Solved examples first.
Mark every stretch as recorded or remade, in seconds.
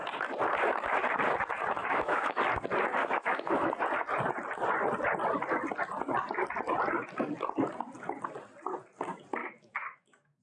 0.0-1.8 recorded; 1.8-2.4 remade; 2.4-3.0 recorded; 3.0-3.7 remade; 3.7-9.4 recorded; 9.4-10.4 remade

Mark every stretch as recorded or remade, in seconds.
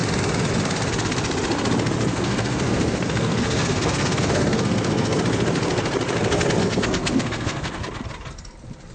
0.0-2.1 recorded; 2.1-5.2 remade; 5.2-6.6 recorded; 6.6-7.8 remade; 7.8-8.9 recorded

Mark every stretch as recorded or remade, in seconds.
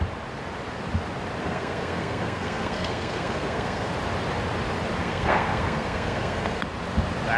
0.0-1.4 recorded; 1.4-3.9 remade; 3.9-5.0 recorded; 5.0-6.6 remade; 6.6-7.4 recorded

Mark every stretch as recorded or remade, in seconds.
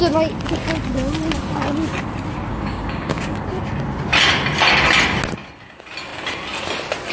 0.0-2.5 recorded; 2.5-3.4 remade; 3.4-7.1 recorded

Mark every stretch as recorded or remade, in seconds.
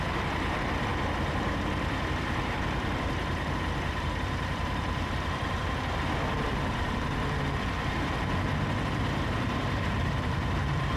0.0-11.0 remade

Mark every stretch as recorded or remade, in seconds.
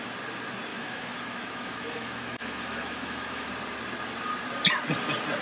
0.0-0.7 recorded; 0.7-3.5 remade; 3.5-5.4 recorded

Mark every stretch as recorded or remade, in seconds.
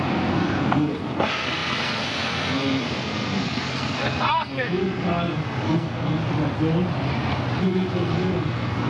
0.0-6.2 remade; 6.2-7.6 recorded; 7.6-8.9 remade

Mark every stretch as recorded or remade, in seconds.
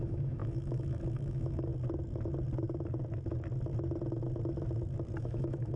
0.0-1.7 remade; 1.7-5.2 recorded; 5.2-5.8 remade